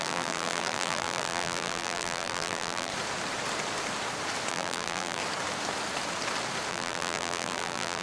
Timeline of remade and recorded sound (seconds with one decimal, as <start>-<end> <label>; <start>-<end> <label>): 0.0-2.9 remade; 2.9-4.5 recorded; 4.5-5.2 remade; 5.2-6.7 recorded; 6.7-8.0 remade